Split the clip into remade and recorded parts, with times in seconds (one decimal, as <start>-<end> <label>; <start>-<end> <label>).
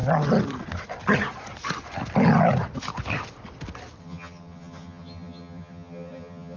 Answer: 0.0-4.0 recorded; 4.0-6.6 remade